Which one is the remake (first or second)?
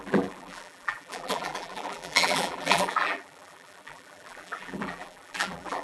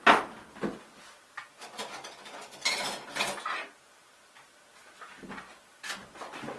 first